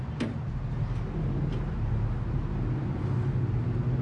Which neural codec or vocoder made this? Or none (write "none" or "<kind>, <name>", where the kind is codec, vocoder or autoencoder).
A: none